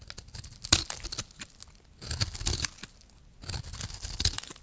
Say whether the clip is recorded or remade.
recorded